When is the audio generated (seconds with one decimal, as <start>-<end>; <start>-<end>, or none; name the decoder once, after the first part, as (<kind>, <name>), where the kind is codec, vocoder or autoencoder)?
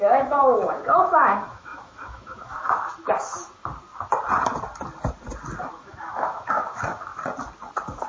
0.0-3.7 (autoencoder, DAC-VAE); 5.7-7.1